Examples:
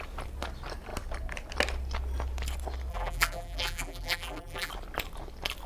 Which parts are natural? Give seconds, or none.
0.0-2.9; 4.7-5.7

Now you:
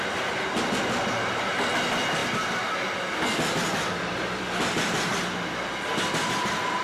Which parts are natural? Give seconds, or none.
0.0-6.8